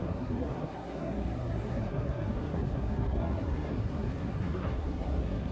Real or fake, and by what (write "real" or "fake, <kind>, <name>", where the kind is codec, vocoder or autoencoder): fake, codec, SNAC